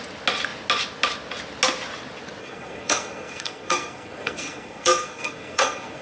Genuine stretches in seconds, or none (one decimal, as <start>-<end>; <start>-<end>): 0.0-2.4